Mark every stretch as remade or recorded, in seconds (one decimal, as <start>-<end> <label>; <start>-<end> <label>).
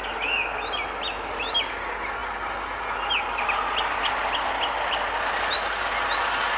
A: 0.0-6.6 recorded